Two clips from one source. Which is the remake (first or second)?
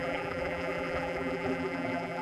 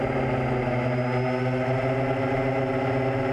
first